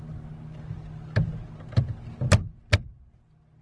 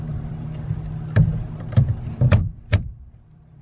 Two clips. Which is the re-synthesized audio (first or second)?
second